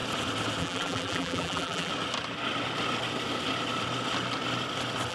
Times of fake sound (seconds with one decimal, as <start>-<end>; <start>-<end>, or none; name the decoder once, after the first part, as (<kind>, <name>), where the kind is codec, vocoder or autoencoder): 0.6-1.9 (vocoder, BigVGAN v2)